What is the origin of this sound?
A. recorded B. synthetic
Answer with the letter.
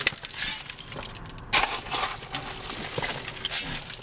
A